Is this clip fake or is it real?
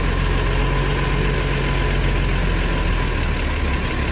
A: real